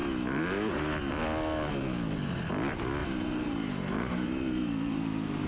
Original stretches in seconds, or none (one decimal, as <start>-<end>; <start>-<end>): 0.0-3.0